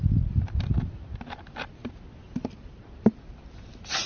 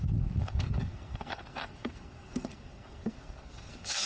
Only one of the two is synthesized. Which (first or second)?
second